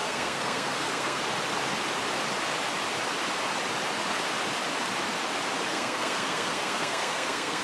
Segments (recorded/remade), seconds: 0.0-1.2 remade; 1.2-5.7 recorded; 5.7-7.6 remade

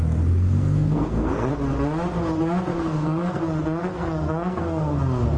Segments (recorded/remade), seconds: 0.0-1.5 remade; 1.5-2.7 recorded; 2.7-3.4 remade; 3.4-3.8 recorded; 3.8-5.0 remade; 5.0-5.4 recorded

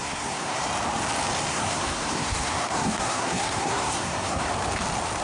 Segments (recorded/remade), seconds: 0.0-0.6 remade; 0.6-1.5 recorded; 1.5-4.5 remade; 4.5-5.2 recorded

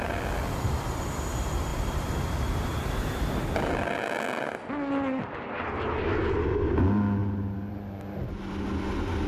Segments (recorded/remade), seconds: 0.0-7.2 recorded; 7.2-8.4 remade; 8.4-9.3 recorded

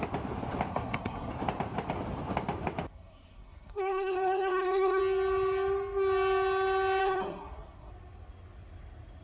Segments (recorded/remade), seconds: 0.0-0.7 recorded; 0.7-1.3 remade; 1.3-2.9 recorded; 2.9-5.0 remade; 5.0-7.0 recorded; 7.0-7.9 remade; 7.9-9.2 recorded

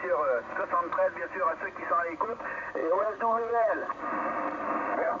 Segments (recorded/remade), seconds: 0.0-2.8 recorded; 2.8-4.0 remade; 4.0-5.2 recorded